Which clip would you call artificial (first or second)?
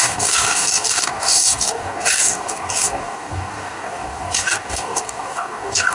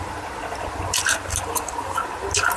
first